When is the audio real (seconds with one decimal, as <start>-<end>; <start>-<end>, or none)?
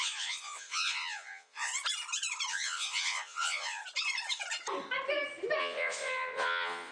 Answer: 1.7-2.5; 3.8-5.6